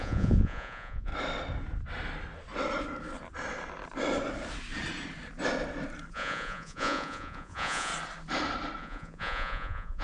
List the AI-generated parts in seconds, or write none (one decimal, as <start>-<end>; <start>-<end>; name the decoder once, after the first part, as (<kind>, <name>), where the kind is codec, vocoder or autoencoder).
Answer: 0.0-1.1 (vocoder, Vocos); 6.1-7.9; 8.8-10.0